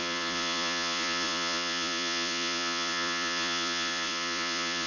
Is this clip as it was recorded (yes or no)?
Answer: no